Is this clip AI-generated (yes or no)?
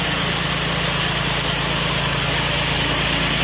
no